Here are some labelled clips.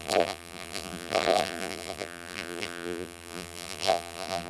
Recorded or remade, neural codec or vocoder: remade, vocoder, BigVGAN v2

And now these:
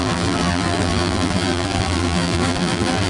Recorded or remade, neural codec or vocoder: remade, vocoder, BigVGAN v2